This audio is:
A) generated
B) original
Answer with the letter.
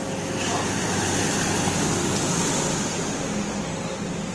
B